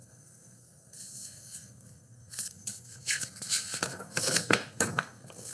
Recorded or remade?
remade